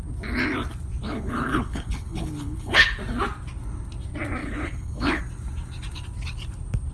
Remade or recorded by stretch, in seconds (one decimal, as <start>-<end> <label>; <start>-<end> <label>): 0.0-1.0 recorded; 1.0-3.0 remade; 3.0-4.4 recorded; 4.4-5.2 remade; 5.2-6.9 recorded